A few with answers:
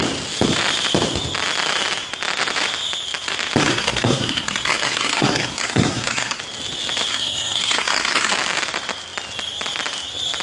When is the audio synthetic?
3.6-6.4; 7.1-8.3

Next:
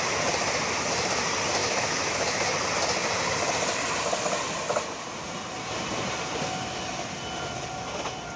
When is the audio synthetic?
1.6-2.5

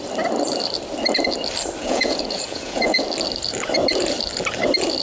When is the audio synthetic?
1.8-3.0